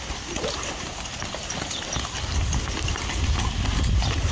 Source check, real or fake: real